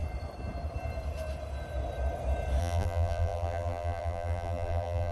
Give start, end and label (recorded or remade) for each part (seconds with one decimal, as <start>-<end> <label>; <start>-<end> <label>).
0.0-2.6 recorded; 2.6-5.1 remade